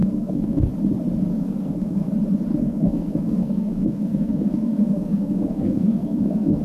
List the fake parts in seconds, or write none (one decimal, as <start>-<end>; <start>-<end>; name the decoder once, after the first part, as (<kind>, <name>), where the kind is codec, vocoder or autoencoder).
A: 0.0-0.7 (codec, SNAC); 1.3-2.1; 2.5-6.6